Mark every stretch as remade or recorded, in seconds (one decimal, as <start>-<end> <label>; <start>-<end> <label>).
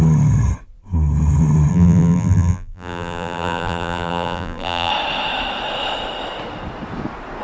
0.0-1.7 recorded; 1.7-4.9 remade; 4.9-7.4 recorded